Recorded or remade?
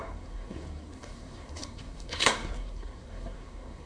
remade